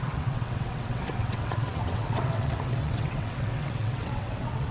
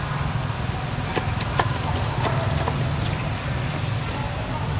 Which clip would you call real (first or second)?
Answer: second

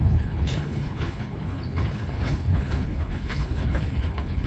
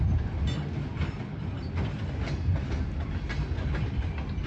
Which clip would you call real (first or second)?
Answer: second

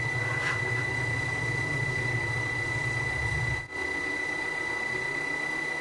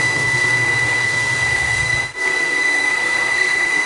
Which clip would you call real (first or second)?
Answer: first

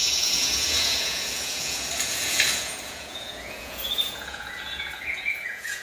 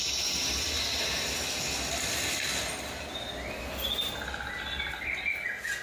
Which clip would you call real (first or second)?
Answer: second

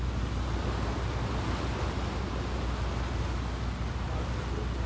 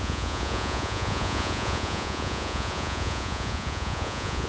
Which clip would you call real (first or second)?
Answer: first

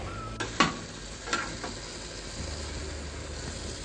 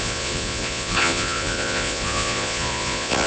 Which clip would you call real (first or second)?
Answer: first